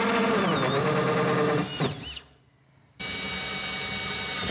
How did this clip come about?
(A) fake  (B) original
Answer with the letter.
B